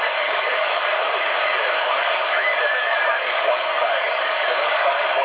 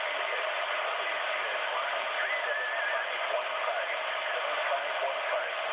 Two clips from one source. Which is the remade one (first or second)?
first